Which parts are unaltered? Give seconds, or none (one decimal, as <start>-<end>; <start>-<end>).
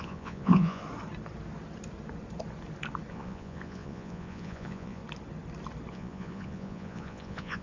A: 0.8-3.1; 5.0-5.9